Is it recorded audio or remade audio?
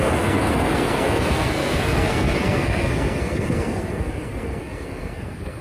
remade